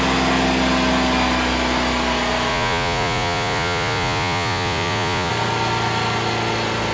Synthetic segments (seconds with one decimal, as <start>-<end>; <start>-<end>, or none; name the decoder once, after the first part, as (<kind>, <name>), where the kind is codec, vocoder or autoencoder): 2.5-5.3 (vocoder, Vocos)